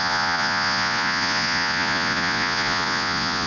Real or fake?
fake